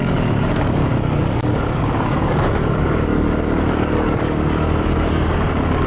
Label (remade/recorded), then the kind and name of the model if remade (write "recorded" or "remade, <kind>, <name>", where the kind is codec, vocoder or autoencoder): remade, codec, DAC